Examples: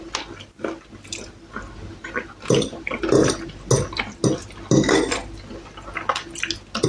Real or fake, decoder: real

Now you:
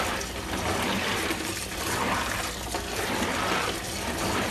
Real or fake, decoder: real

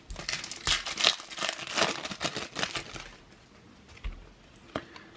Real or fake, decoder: real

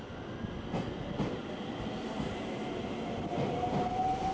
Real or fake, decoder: real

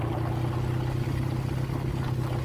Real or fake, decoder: real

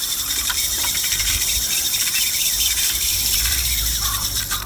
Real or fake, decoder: fake, vocoder, BigVGAN v2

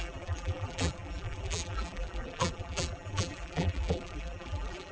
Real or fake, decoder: fake, vocoder, BigVGAN v2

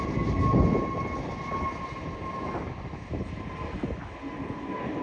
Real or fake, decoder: real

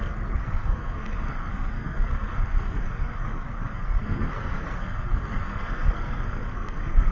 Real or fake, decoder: fake, codec, SNAC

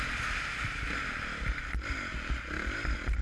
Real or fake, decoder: real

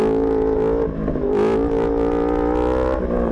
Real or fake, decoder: real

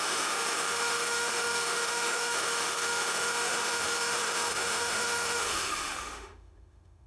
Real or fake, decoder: fake, autoencoder, DAC-VAE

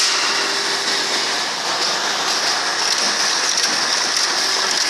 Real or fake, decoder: real